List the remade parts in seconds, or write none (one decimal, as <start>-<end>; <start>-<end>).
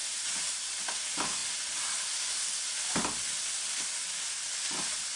none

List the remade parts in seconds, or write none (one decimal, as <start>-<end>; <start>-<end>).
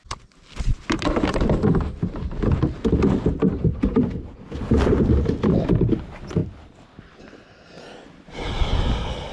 none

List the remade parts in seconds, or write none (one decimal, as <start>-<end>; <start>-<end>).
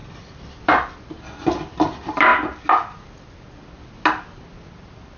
none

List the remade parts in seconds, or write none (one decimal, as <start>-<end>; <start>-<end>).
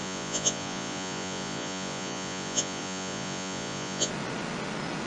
0.0-4.1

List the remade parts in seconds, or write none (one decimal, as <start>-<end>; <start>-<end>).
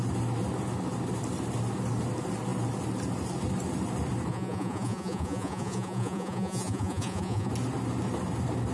4.3-7.5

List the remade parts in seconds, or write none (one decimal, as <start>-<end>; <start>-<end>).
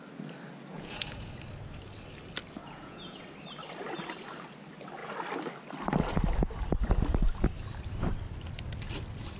0.7-1.3; 2.6-3.2